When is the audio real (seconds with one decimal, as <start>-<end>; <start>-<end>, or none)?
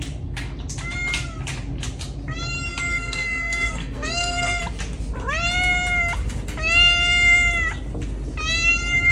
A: 0.0-2.9; 4.6-9.1